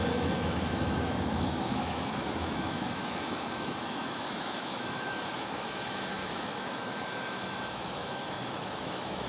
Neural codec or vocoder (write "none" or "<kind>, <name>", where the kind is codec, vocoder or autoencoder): autoencoder, DAC-VAE